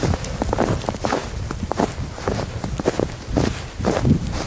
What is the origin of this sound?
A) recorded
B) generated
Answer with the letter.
A